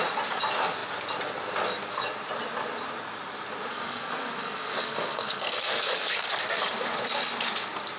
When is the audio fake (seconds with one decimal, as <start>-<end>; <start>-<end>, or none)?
3.7-6.2